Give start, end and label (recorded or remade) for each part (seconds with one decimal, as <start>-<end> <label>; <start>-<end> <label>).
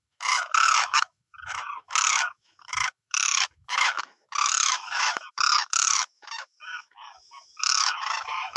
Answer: 0.0-8.6 remade